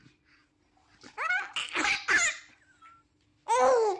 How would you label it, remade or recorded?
recorded